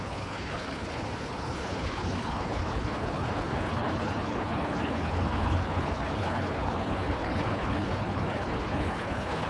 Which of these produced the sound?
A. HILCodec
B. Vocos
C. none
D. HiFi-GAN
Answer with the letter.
A